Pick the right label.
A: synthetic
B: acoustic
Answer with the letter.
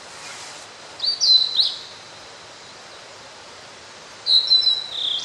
B